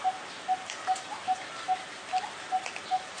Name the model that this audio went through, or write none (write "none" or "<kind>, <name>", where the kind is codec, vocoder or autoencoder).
none